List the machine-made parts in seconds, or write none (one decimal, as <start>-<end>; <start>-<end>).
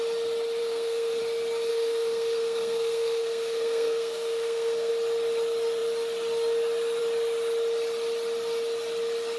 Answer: 0.6-1.2; 1.7-4.9